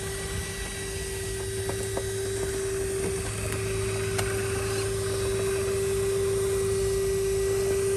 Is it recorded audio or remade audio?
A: recorded